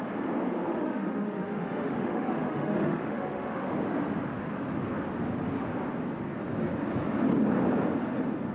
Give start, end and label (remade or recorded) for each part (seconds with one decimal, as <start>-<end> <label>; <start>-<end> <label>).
0.0-0.7 recorded; 0.7-3.7 remade; 3.7-8.5 recorded